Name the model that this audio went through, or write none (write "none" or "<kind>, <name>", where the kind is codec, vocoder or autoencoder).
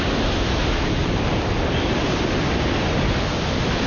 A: none